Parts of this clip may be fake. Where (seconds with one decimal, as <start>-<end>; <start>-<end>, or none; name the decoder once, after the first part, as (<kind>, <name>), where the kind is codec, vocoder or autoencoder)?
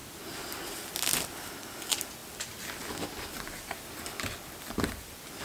1.0-2.2 (vocoder, BigVGAN v2); 4.2-5.4